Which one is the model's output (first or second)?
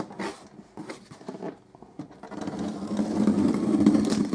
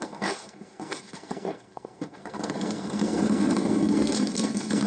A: second